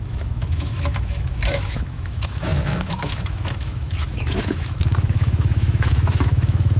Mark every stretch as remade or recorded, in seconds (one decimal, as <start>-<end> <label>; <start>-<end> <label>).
0.0-6.8 remade